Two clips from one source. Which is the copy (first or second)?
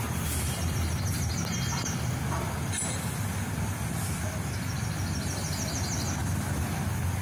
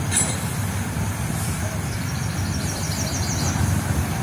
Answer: second